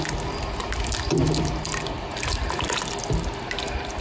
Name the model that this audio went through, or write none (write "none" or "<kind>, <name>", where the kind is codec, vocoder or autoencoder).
none